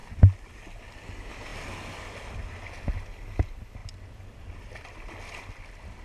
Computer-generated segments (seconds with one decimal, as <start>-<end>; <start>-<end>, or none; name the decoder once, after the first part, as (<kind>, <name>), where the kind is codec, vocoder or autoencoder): none